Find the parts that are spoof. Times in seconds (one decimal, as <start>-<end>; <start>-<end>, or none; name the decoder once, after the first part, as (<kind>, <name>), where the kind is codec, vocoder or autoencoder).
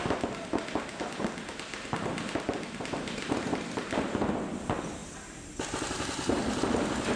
none